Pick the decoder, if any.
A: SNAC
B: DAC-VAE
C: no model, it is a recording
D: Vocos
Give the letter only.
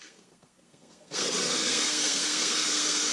A